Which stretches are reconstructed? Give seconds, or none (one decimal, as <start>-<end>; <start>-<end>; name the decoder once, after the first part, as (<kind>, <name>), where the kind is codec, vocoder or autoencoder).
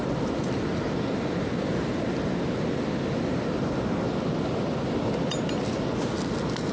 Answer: none